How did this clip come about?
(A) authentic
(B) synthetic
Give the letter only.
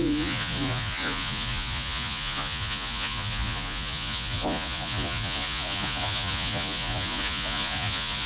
B